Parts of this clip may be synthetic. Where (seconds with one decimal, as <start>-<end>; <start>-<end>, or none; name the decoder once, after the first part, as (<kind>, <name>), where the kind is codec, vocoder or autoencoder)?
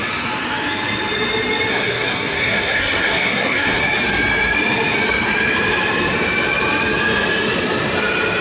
1.7-3.8 (codec, SNAC)